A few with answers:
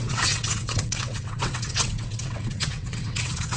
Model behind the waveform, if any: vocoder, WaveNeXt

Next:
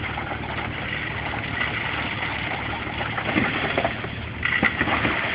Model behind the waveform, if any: none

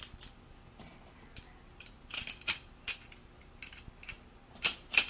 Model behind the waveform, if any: none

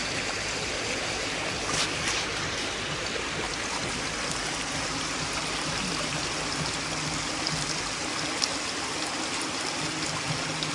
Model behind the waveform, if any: none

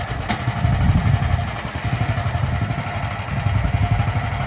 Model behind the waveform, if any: none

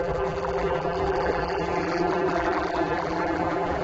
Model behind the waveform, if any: vocoder, BigVGAN v2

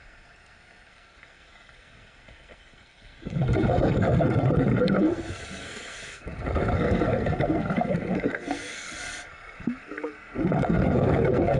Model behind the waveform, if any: codec, SNAC